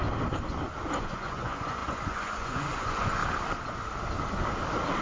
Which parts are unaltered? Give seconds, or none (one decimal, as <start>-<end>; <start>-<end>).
0.0-1.0; 3.2-5.0